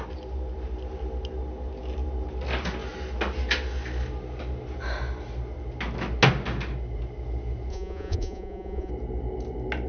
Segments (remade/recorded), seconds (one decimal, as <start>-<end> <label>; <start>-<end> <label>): 0.0-7.7 recorded; 7.7-8.9 remade; 8.9-9.9 recorded